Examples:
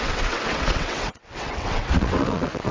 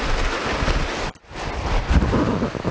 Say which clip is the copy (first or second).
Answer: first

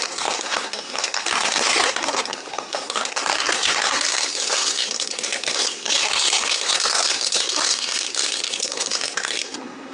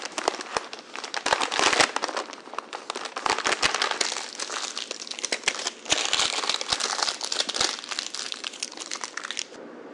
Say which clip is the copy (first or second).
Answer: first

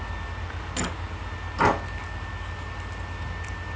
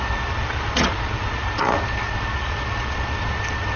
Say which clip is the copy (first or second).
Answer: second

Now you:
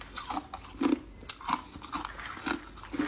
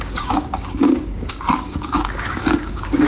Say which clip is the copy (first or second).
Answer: second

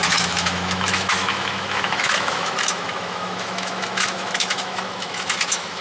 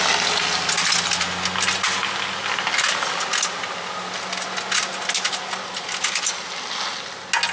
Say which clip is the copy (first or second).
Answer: first